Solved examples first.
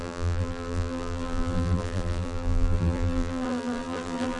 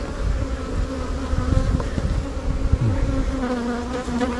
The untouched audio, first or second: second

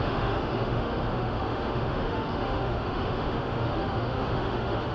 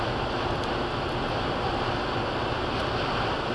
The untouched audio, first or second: second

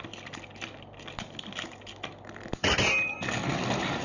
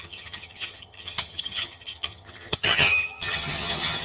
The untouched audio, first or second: first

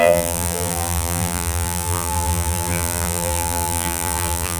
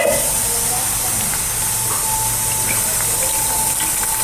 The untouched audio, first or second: second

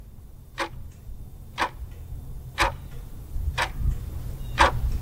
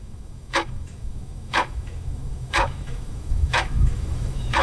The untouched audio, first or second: first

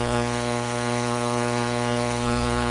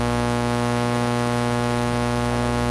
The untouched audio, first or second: second